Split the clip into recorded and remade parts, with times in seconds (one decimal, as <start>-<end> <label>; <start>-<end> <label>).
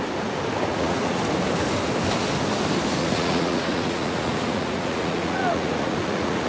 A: 0.0-0.7 recorded; 0.7-1.2 remade; 1.2-3.0 recorded; 3.0-6.5 remade